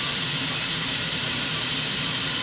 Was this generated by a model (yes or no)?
yes